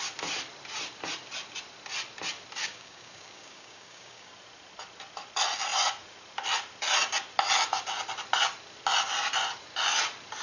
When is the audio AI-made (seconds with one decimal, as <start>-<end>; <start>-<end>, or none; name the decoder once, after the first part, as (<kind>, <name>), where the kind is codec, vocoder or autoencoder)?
2.6-4.3 (codec, DAC)